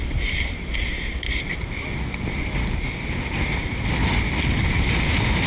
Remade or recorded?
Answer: recorded